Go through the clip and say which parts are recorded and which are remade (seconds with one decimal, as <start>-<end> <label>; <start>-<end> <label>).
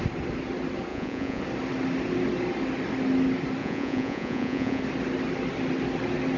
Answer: 0.0-0.9 recorded; 0.9-1.4 remade; 1.4-3.6 recorded; 3.6-4.8 remade; 4.8-6.4 recorded